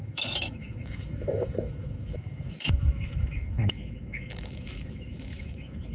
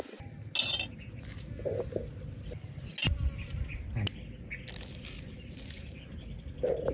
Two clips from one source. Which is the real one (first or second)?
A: second